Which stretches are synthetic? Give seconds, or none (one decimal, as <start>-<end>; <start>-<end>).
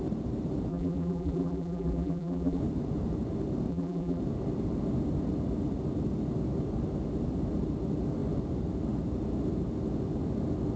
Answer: 0.7-2.6; 3.7-4.2